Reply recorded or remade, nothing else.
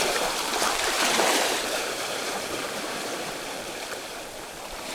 remade